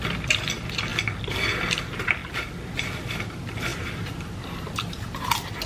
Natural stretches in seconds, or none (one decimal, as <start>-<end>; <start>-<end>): 0.9-1.7; 2.2-3.1